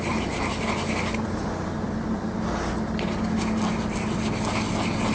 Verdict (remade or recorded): recorded